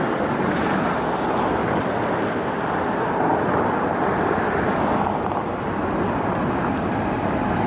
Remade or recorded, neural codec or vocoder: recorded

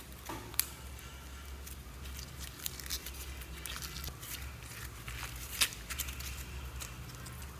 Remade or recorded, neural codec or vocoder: recorded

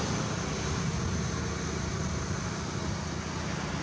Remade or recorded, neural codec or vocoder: recorded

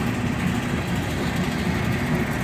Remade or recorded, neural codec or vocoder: recorded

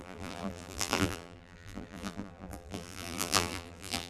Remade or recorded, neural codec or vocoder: remade, vocoder, BigVGAN v2